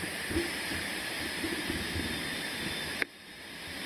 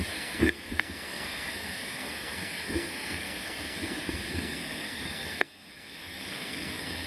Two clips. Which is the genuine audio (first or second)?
first